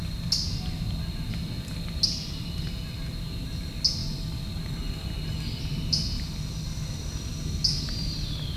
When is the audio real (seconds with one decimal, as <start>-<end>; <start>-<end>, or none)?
0.0-8.6